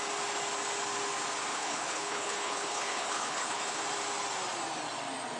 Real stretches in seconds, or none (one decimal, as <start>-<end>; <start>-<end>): 0.0-1.5; 3.8-5.4